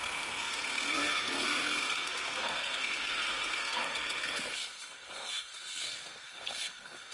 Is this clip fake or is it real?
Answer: fake